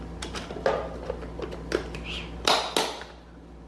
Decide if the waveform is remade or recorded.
recorded